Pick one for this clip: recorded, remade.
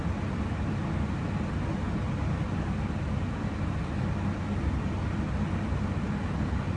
recorded